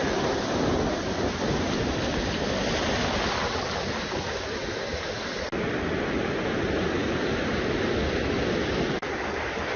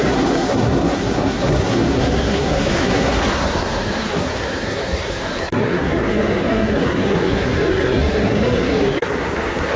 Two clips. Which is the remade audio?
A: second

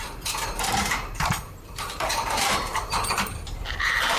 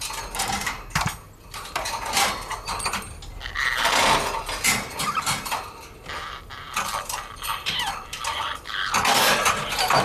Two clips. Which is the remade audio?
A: first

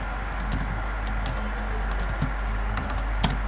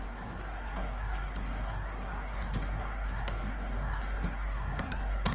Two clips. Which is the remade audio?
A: second